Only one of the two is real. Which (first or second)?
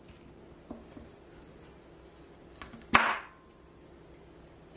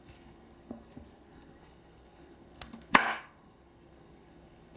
first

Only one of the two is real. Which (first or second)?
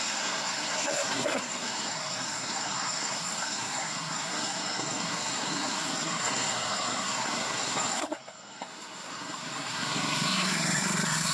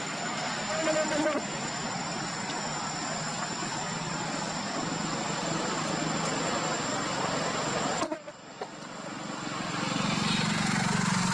second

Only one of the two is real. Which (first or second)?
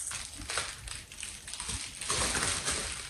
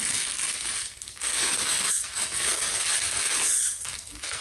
first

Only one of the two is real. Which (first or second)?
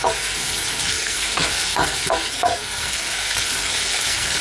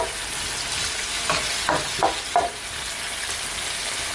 second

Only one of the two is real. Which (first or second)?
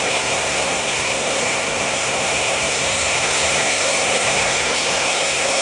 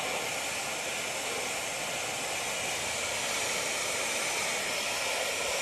second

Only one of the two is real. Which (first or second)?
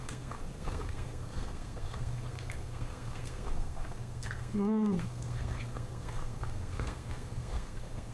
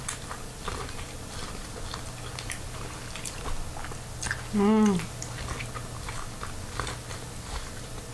second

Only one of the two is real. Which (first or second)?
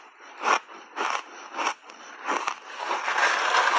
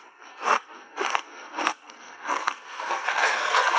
first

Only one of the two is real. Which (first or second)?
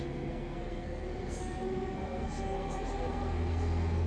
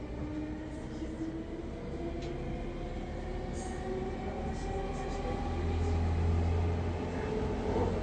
second